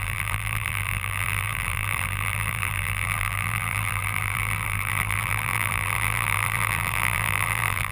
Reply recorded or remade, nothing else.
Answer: remade